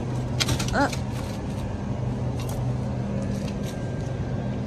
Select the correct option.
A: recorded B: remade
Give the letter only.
A